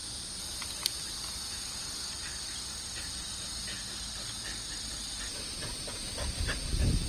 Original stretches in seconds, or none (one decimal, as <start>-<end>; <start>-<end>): 0.0-7.1